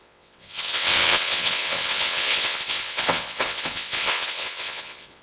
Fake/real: fake